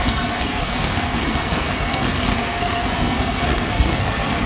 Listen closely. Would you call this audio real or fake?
fake